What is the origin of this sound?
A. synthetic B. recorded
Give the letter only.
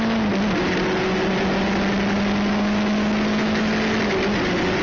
B